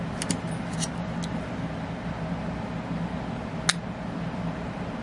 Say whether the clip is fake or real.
real